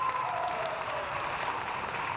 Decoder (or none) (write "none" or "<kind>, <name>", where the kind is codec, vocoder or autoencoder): vocoder, BigVGAN v2